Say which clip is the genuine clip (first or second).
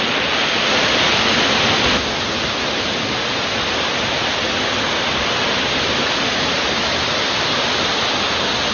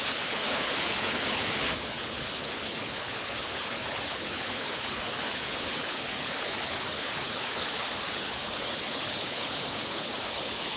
first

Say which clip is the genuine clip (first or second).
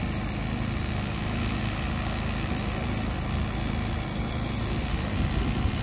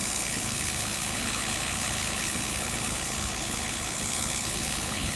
first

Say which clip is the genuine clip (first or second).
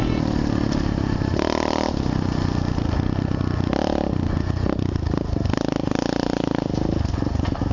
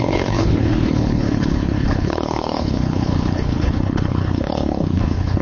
first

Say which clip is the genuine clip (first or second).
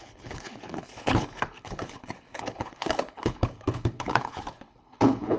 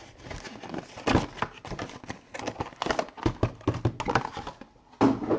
second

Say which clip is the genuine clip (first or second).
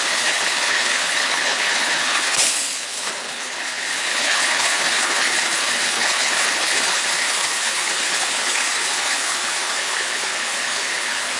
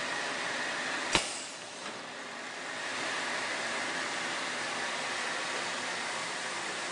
second